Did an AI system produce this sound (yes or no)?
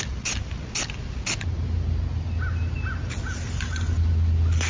no